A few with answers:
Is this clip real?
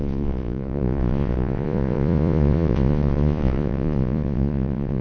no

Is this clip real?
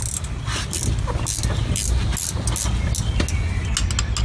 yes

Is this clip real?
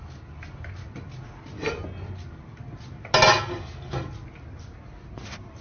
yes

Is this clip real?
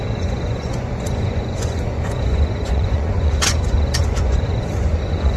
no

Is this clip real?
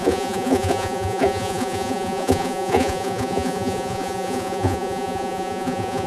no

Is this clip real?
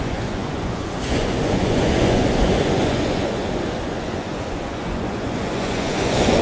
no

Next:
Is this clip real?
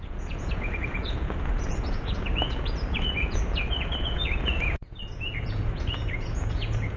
no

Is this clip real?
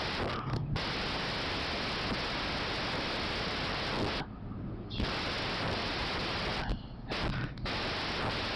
yes